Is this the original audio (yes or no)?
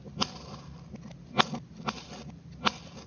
yes